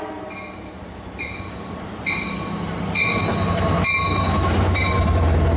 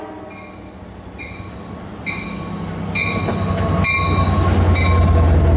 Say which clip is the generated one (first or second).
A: first